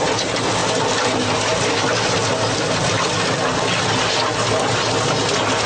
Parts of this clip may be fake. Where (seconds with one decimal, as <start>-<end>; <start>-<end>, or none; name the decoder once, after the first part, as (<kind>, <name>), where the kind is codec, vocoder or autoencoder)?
none

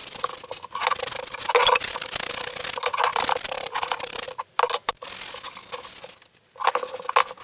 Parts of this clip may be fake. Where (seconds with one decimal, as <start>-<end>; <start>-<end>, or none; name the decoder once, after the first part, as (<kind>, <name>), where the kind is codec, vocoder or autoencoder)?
3.1-4.5 (vocoder, BigVGAN v2)

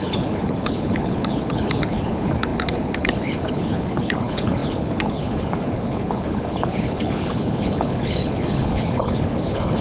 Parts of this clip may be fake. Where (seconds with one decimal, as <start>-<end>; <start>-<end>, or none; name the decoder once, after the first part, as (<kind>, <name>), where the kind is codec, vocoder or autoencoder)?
0.0-9.8 (codec, HILCodec)